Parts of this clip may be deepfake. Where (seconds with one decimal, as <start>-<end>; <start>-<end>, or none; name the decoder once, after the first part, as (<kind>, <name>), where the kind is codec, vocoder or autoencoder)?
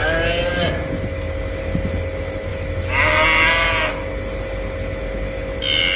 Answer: none